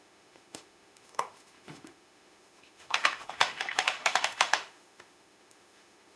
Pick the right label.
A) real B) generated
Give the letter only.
B